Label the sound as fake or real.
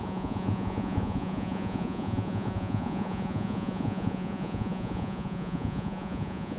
fake